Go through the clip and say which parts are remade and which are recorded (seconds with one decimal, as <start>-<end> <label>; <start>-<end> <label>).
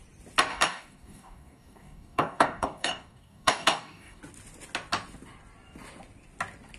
0.0-0.5 recorded; 0.5-4.2 remade; 4.2-6.8 recorded